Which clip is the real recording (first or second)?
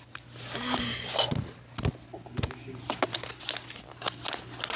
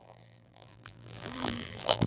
first